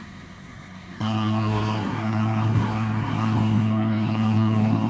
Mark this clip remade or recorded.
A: remade